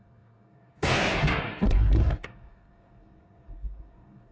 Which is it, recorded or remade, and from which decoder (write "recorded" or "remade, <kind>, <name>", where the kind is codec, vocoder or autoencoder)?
remade, codec, SNAC